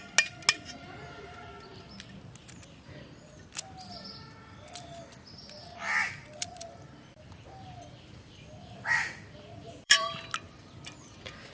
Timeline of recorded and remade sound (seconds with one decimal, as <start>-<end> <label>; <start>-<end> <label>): 0.0-5.6 recorded; 5.6-10.2 remade; 10.2-11.5 recorded